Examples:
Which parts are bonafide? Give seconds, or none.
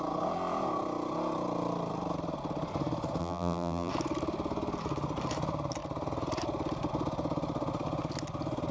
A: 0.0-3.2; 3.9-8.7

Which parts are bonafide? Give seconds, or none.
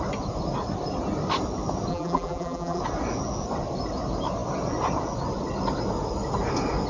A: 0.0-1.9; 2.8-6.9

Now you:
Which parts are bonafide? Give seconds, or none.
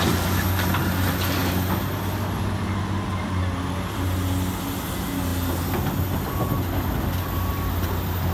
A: 0.0-8.3